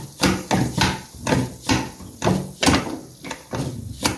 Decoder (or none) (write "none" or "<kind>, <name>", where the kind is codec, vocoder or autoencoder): none